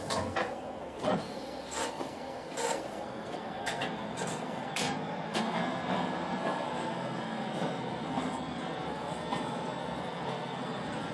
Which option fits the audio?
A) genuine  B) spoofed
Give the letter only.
B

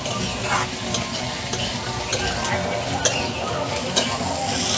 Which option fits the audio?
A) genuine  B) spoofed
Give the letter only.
A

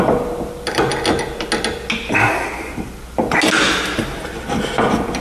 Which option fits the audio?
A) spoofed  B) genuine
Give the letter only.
B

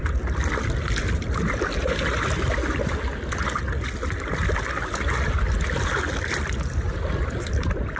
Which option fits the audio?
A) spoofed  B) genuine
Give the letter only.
B